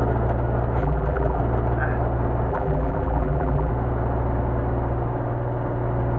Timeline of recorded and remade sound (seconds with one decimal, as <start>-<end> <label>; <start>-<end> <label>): 0.0-0.8 recorded; 0.8-1.4 remade; 1.4-2.5 recorded; 2.5-3.7 remade; 3.7-6.2 recorded